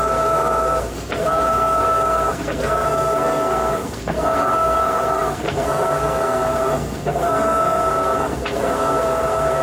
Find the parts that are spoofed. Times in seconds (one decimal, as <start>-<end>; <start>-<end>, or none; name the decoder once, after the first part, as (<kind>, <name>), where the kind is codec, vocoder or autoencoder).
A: 0.0-9.6 (codec, SNAC)

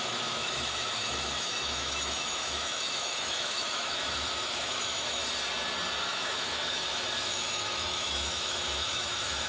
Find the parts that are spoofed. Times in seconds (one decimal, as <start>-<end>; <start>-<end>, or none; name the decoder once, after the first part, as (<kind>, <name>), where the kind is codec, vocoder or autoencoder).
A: 0.0-5.2 (autoencoder, DAC-VAE); 6.0-9.5

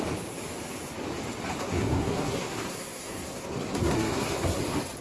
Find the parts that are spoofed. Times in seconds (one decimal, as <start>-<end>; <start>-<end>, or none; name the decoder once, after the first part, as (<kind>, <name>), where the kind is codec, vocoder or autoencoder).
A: 1.6-4.6 (codec, SNAC)

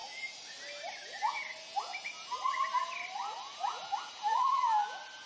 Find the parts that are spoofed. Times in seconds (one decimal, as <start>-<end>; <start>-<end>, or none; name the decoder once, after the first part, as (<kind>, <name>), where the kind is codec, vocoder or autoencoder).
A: none

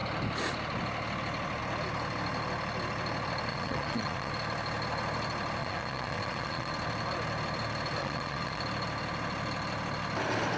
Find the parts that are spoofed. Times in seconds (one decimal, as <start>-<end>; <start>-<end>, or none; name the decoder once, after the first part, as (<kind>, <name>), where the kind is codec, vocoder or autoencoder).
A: 3.5-4.3 (vocoder, Vocos); 5.6-6.7; 8.0-8.6

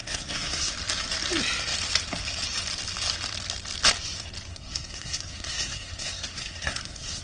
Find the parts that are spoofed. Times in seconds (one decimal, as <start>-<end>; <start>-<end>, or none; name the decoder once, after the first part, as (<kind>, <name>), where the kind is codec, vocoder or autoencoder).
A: 0.0-0.7 (codec, SNAC); 4.5-7.2